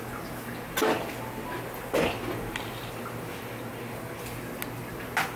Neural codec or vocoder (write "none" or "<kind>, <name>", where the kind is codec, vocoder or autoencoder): none